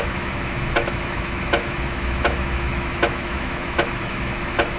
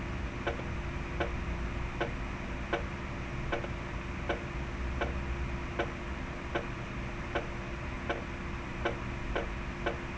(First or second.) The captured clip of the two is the second